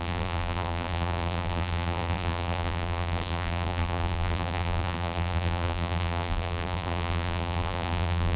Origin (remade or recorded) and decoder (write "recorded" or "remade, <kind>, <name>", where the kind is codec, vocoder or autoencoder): remade, vocoder, BigVGAN v2